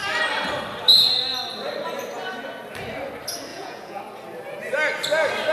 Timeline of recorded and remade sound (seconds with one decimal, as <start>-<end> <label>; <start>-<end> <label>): 0.0-3.5 recorded; 3.5-4.0 remade; 4.0-5.5 recorded

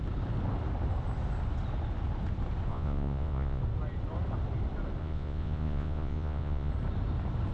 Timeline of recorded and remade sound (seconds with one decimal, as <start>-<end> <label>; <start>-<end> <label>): 0.0-2.7 recorded; 2.7-3.6 remade; 3.6-5.0 recorded; 5.0-6.7 remade; 6.7-7.5 recorded

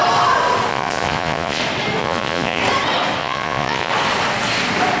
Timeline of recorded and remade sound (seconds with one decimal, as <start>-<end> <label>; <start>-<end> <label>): 0.0-0.7 recorded; 0.7-1.6 remade; 1.6-2.0 recorded; 2.0-2.6 remade; 2.6-3.2 recorded; 3.2-3.9 remade; 3.9-5.0 recorded